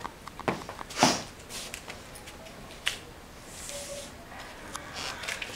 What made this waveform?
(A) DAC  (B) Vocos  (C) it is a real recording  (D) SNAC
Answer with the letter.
C